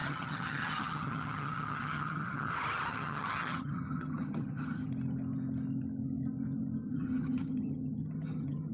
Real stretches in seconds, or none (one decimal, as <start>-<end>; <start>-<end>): 2.5-2.9; 4.9-6.8